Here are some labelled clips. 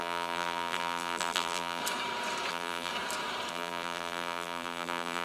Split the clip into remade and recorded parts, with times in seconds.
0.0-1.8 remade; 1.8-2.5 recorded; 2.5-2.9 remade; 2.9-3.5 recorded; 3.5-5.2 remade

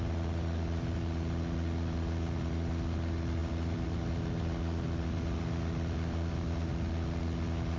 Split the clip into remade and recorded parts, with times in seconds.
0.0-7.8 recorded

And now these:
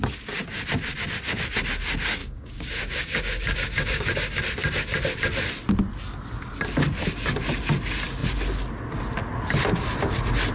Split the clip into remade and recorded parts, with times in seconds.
0.0-2.2 recorded; 2.2-4.4 remade; 4.4-10.5 recorded

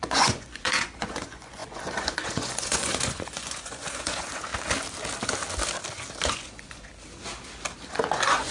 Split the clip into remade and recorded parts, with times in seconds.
0.0-4.5 remade; 4.5-6.3 recorded; 6.3-6.9 remade; 6.9-7.9 recorded; 7.9-8.5 remade

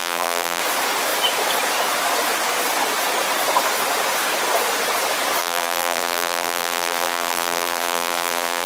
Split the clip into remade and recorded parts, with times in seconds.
0.0-0.6 remade; 0.6-5.4 recorded; 5.4-8.7 remade